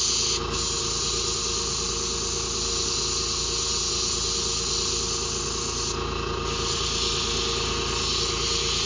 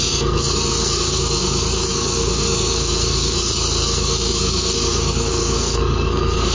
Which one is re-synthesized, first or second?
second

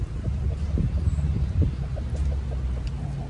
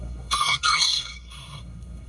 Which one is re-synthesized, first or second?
second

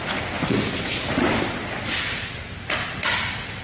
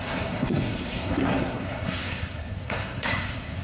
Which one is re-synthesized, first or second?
second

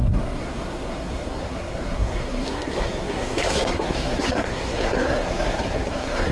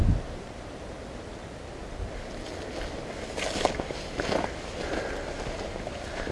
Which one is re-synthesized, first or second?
first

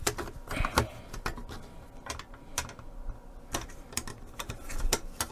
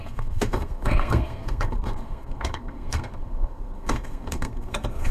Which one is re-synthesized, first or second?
second